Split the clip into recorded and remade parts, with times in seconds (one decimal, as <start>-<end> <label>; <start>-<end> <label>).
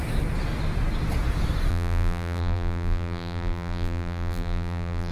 0.0-1.7 recorded; 1.7-5.1 remade